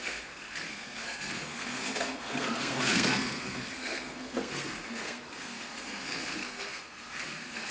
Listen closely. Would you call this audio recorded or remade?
remade